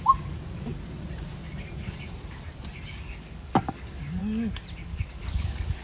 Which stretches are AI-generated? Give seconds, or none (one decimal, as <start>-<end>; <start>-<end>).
0.0-0.7; 2.9-4.2; 4.8-5.8